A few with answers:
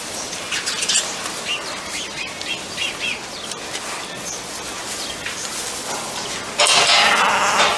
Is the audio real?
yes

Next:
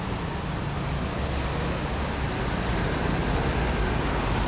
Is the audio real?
yes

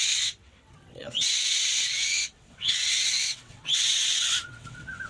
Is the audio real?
no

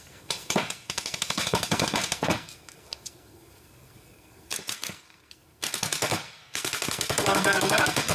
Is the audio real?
no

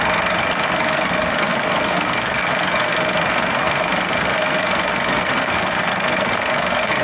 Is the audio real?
no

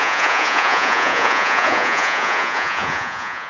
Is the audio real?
no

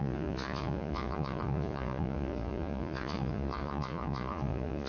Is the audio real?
no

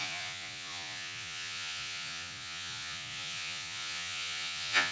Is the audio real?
no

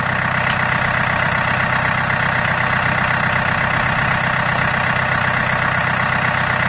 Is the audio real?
yes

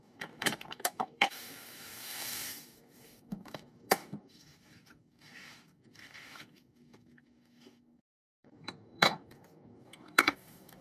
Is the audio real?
no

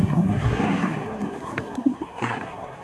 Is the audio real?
no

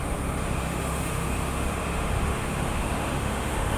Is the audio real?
no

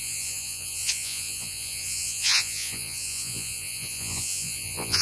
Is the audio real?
no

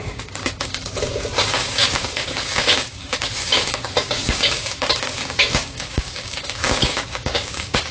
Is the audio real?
no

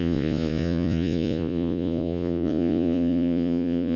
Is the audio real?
no